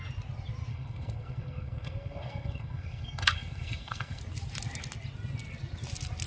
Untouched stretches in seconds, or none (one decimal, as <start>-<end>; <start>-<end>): 0.0-0.7; 4.2-6.3